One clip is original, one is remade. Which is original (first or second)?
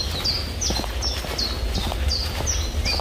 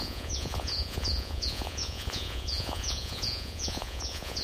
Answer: first